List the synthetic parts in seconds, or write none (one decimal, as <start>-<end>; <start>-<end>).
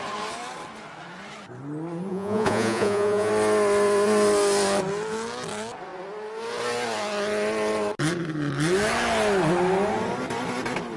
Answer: 2.1-3.3